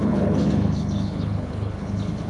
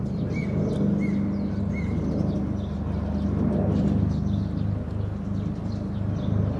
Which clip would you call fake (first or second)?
first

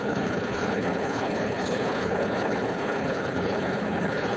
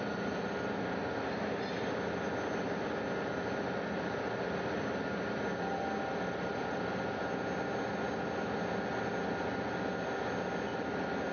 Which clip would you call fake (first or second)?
first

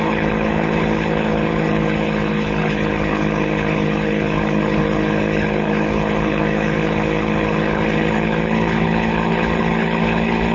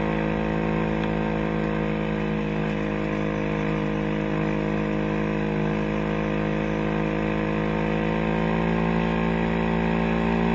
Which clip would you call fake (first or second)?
first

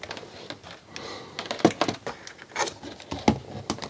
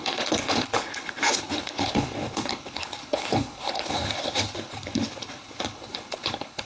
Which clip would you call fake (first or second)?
second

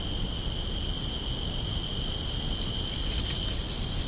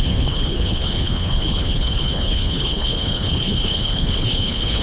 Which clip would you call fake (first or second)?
second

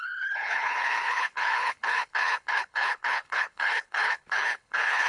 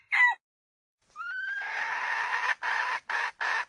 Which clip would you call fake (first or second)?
first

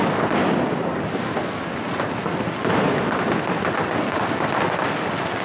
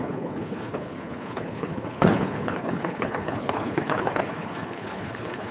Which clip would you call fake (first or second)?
second